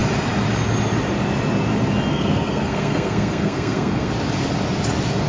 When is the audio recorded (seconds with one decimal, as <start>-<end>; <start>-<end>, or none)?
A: 0.0-2.1; 4.1-5.3